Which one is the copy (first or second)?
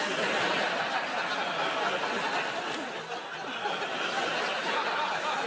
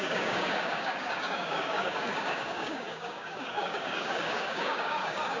second